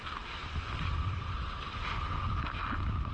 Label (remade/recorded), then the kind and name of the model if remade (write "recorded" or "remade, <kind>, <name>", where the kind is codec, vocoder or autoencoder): recorded